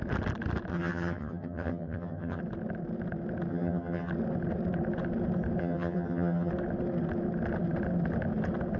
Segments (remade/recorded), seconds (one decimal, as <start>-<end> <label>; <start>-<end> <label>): 0.0-0.7 recorded; 0.7-2.4 remade; 2.4-3.5 recorded; 3.5-4.1 remade; 4.1-5.6 recorded; 5.6-6.5 remade; 6.5-8.8 recorded